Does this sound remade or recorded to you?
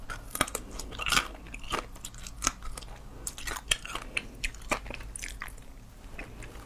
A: recorded